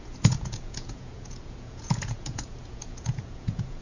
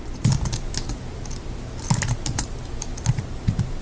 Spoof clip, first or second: first